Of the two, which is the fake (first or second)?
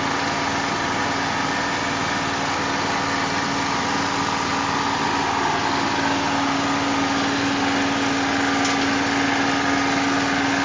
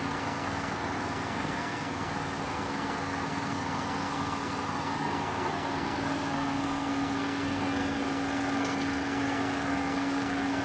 second